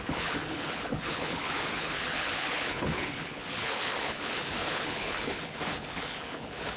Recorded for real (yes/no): no